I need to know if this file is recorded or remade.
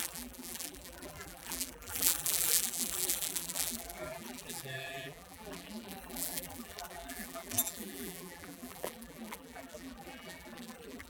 remade